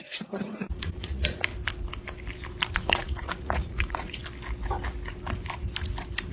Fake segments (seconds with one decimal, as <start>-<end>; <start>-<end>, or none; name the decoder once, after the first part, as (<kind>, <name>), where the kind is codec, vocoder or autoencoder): 0.0-1.5 (vocoder, Vocos); 2.7-4.2